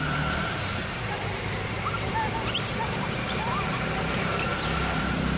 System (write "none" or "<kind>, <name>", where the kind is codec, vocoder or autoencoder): vocoder, BigVGAN v2